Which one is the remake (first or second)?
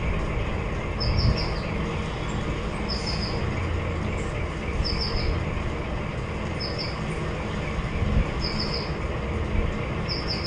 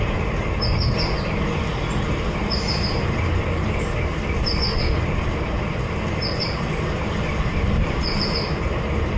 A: second